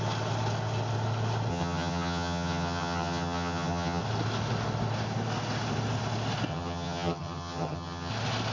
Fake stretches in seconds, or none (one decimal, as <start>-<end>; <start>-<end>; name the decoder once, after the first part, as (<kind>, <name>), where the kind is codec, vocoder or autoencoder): 1.5-4.0 (vocoder, HiFi-GAN); 6.5-8.1